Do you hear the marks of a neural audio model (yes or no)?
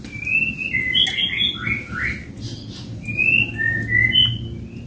no